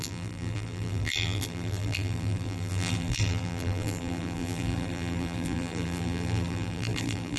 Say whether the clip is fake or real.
fake